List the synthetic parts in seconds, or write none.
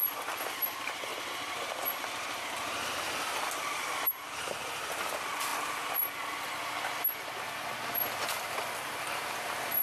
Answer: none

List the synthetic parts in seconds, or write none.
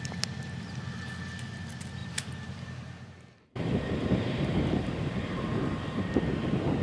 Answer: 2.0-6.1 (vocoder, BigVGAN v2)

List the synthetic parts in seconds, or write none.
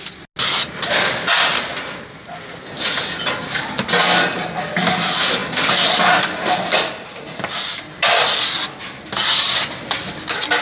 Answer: none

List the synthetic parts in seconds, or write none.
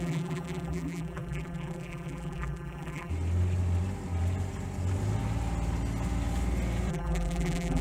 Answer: 0.0-3.1 (vocoder, BigVGAN v2); 6.9-7.8